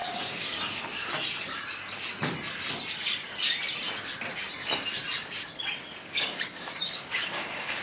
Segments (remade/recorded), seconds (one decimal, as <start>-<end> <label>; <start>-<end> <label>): 0.0-0.8 remade; 0.8-6.0 recorded; 6.0-7.8 remade